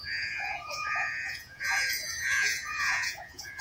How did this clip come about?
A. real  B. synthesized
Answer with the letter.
B